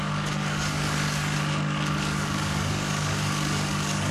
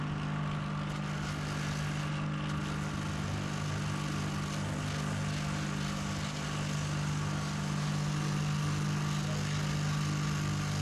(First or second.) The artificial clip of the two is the first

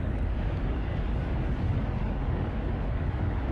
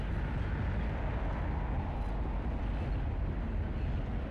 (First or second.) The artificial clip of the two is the first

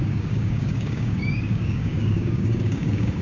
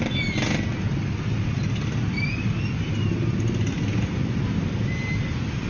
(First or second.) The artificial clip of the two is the first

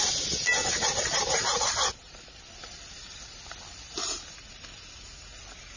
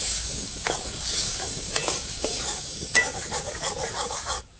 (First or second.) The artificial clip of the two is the second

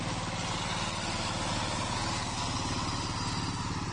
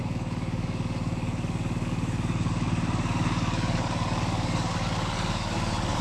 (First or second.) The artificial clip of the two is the second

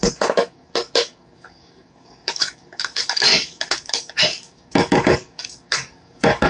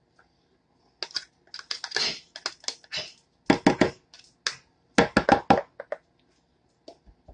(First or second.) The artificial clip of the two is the first